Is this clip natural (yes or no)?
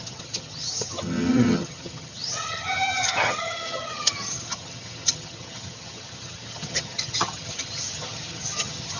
no